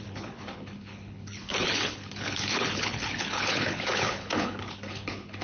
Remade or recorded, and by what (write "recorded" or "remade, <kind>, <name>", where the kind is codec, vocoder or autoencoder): remade, codec, HILCodec